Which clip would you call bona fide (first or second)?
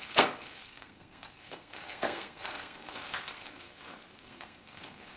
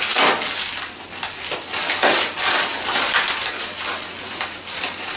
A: second